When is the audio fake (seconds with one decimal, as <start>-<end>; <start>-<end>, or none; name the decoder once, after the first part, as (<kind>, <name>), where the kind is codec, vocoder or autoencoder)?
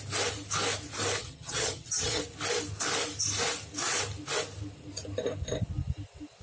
1.2-2.2 (vocoder, HiFi-GAN)